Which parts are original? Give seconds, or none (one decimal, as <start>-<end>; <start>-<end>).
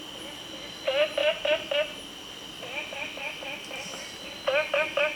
0.0-5.2